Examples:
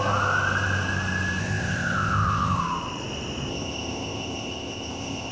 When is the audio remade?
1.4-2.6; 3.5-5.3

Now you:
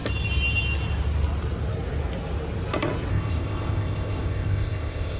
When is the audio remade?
3.1-5.2

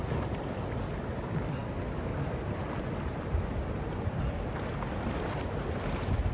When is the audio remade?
none